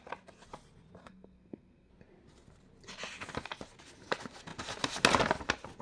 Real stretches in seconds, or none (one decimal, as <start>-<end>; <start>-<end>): 0.0-1.0; 1.9-5.8